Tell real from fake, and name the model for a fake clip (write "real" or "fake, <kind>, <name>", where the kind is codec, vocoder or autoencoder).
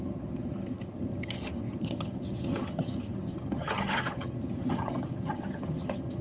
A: fake, vocoder, HiFi-GAN